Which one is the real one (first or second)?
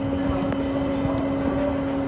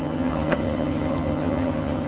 first